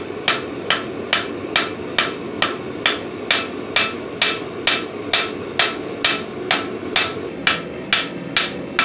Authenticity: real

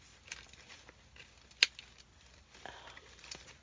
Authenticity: real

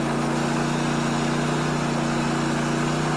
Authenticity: real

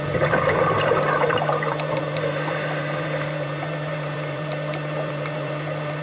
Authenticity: fake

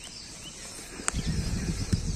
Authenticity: real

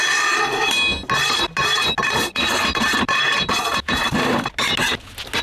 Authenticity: real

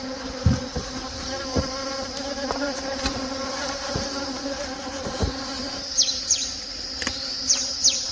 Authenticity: fake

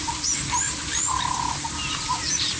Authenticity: fake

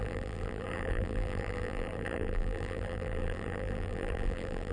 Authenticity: fake